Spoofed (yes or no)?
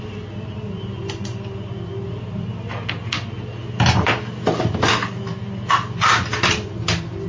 no